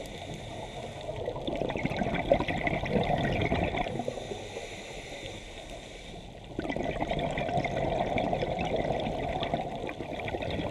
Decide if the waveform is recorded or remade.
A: recorded